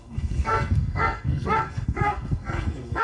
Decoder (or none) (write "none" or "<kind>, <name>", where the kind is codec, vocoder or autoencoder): codec, SNAC